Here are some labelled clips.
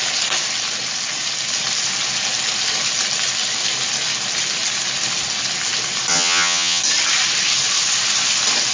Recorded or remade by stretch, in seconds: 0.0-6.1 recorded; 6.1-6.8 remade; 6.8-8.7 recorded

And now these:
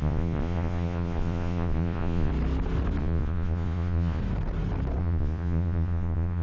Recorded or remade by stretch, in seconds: 0.0-2.3 remade; 2.3-3.0 recorded; 3.0-4.2 remade; 4.2-5.0 recorded; 5.0-6.4 remade

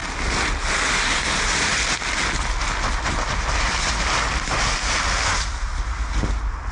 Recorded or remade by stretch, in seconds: 0.0-6.7 recorded

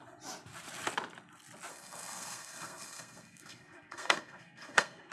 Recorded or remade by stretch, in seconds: 0.0-1.7 recorded; 1.7-5.1 remade

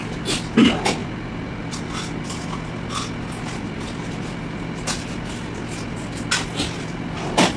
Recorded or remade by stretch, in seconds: 0.0-7.6 recorded

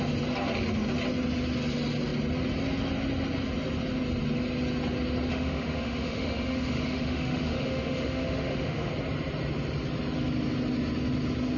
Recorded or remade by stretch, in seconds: 0.0-5.3 recorded; 5.3-8.9 remade; 8.9-11.6 recorded

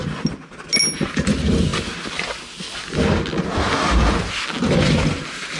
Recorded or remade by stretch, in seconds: 0.0-5.6 recorded